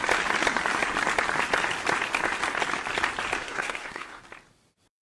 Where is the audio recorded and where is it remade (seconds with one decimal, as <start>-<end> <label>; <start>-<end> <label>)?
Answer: 0.0-3.4 recorded; 3.4-4.2 remade; 4.2-5.0 recorded

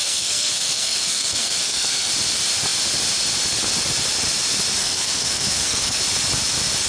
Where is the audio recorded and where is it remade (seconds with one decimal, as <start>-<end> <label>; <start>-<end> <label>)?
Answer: 0.0-2.1 remade; 2.1-4.8 recorded; 4.8-6.0 remade; 6.0-6.9 recorded

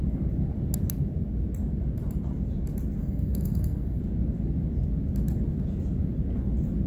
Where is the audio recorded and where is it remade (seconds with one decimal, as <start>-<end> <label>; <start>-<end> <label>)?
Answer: 0.0-3.0 recorded; 3.0-4.0 remade; 4.0-6.9 recorded

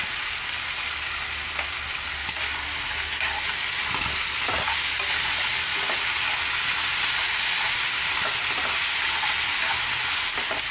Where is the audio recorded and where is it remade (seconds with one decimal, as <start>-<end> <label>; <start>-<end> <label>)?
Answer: 0.0-10.7 recorded

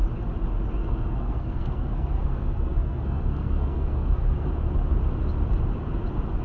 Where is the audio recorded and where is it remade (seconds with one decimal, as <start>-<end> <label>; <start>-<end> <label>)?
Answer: 0.0-0.8 recorded; 0.8-4.5 remade; 4.5-6.4 recorded

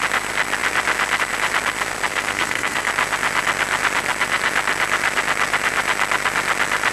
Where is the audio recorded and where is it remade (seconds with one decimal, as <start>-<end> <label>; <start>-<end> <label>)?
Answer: 0.0-2.1 recorded; 2.1-2.9 remade; 2.9-6.9 recorded

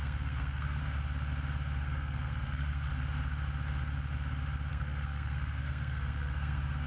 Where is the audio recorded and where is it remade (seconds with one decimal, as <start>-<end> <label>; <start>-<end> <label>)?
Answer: 0.0-0.8 remade; 0.8-1.8 recorded; 1.8-2.9 remade; 2.9-4.7 recorded; 4.7-6.9 remade